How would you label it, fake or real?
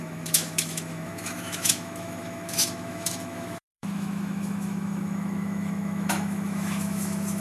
fake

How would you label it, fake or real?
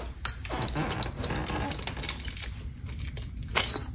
real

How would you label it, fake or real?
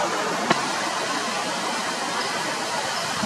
real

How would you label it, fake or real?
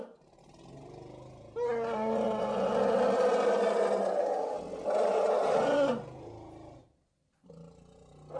real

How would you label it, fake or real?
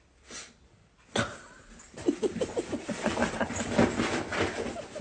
real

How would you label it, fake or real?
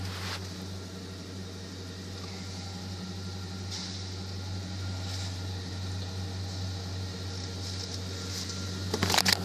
real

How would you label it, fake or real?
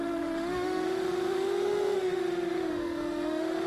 fake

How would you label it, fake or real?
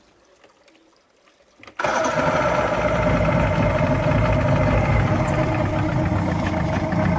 real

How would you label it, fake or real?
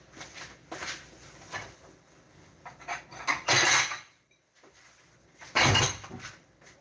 real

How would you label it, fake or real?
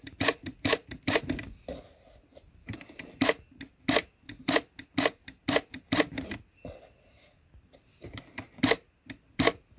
real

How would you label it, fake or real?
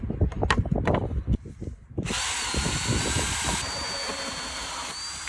real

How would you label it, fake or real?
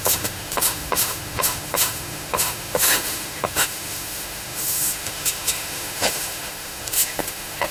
fake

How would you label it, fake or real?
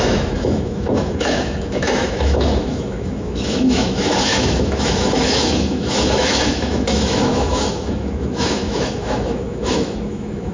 fake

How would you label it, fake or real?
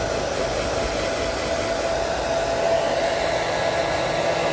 real